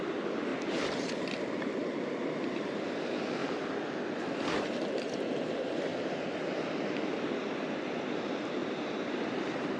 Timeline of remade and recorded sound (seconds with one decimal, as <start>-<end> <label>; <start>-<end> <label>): 0.0-0.5 recorded; 0.5-2.9 remade; 2.9-5.9 recorded; 5.9-6.4 remade; 6.4-9.8 recorded